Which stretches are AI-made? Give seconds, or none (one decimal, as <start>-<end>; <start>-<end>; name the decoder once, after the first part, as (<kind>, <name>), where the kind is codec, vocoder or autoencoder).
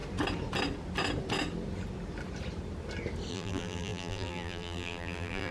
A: 3.3-5.5 (vocoder, BigVGAN v2)